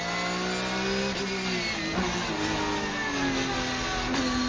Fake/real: real